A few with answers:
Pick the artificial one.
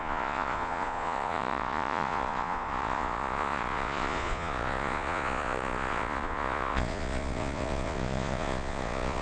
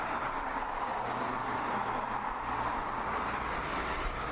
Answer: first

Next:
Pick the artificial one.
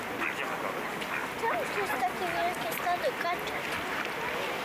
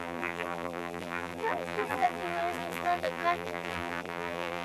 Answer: second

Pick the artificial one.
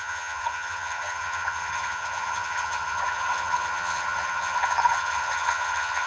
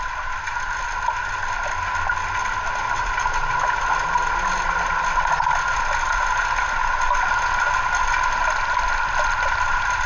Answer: first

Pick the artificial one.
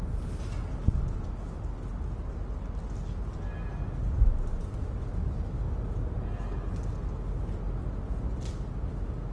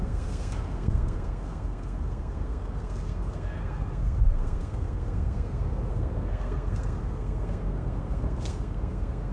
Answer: second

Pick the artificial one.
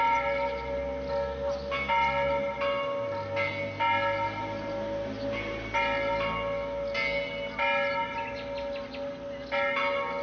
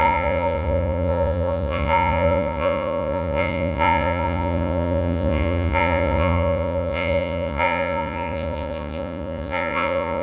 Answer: second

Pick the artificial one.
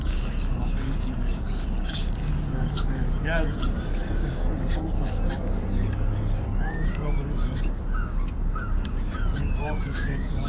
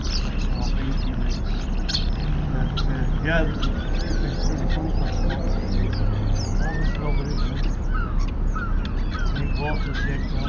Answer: first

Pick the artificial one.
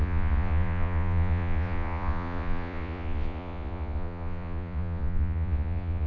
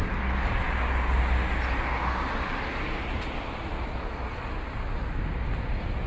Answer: first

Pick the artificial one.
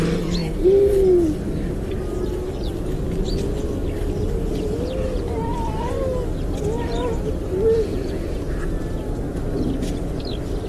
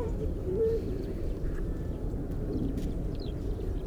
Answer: second